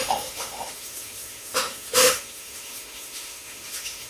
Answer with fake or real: fake